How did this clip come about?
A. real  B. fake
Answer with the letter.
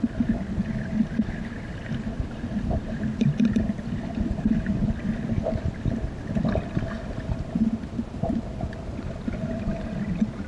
A